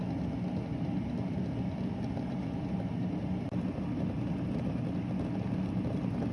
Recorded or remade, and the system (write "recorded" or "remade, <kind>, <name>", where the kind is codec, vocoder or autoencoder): recorded